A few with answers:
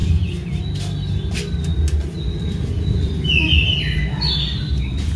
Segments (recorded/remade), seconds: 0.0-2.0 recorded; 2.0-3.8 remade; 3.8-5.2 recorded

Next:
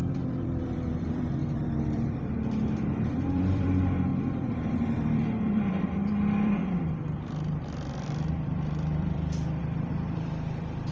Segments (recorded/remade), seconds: 0.0-6.6 remade; 6.6-7.6 recorded; 7.6-10.9 remade

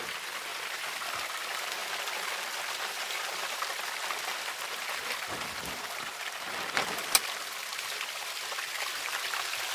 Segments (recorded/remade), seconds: 0.0-0.5 recorded; 0.5-1.1 remade; 1.1-9.7 recorded

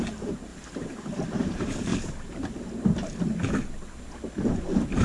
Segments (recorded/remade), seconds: 0.0-0.5 remade; 0.5-1.2 recorded; 1.2-1.9 remade; 1.9-5.0 recorded

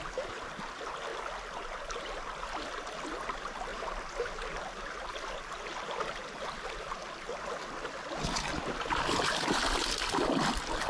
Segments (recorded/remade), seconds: 0.0-1.1 remade; 1.1-2.4 recorded; 2.4-3.7 remade; 3.7-4.6 recorded; 4.6-7.0 remade; 7.0-8.5 recorded; 8.5-10.9 remade

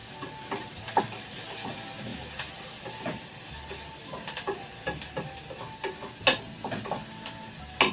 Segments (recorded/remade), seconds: 0.0-2.1 recorded; 2.1-5.7 remade; 5.7-7.9 recorded

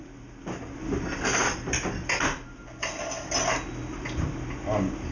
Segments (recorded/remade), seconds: 0.0-1.4 recorded; 1.4-2.6 remade; 2.6-5.1 recorded